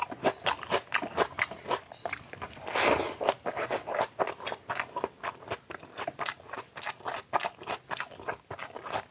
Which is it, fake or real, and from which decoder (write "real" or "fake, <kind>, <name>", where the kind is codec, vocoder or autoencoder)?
real